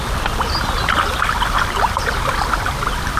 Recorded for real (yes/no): yes